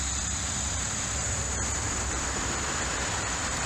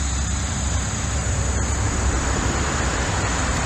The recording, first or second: second